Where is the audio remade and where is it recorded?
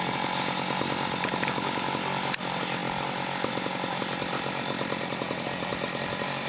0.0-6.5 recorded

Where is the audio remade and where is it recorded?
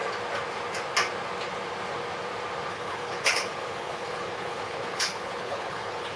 0.0-2.7 recorded; 2.7-6.2 remade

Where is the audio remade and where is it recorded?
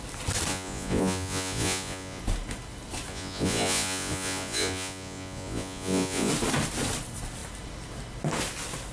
0.0-0.5 recorded; 0.5-2.2 remade; 2.2-3.1 recorded; 3.1-6.3 remade; 6.3-8.9 recorded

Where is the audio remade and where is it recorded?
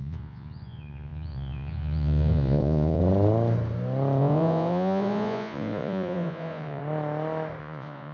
0.0-3.0 remade; 3.0-4.2 recorded; 4.2-6.8 remade; 6.8-7.6 recorded; 7.6-8.1 remade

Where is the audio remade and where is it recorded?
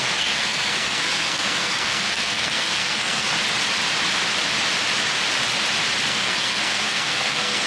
0.0-3.3 remade; 3.3-6.1 recorded; 6.1-7.7 remade